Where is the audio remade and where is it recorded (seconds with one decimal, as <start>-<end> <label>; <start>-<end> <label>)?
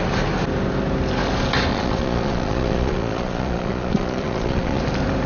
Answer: 0.0-1.7 recorded; 1.7-4.8 remade; 4.8-5.3 recorded